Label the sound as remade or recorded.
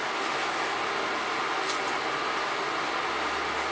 recorded